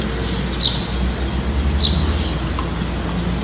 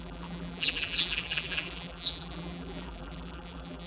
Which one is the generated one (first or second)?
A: second